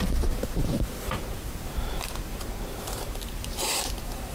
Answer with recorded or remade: remade